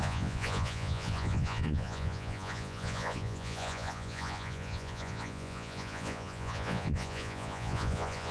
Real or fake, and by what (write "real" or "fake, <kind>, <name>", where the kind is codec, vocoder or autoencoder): fake, vocoder, Vocos